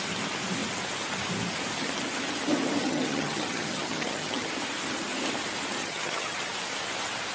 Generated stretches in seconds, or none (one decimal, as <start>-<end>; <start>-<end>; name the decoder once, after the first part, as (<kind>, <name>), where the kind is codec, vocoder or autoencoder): 2.8-4.5 (vocoder, HiFi-GAN); 5.8-6.4